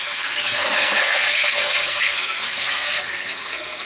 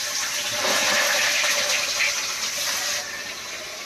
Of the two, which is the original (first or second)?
second